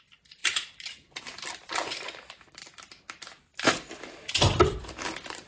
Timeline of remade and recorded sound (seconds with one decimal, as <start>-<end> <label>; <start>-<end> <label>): 0.0-0.4 remade; 0.4-1.2 recorded; 1.2-2.6 remade; 2.6-3.9 recorded; 3.9-5.5 remade